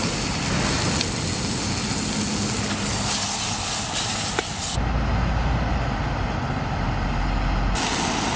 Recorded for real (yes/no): yes